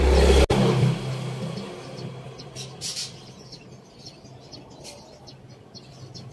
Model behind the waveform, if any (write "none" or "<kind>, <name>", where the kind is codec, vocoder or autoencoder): none